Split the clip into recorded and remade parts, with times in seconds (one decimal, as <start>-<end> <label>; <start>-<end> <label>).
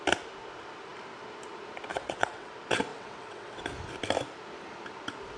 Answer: 0.0-1.9 recorded; 1.9-2.5 remade; 2.5-2.9 recorded; 2.9-3.6 remade; 3.6-5.4 recorded